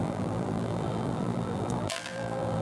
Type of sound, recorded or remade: remade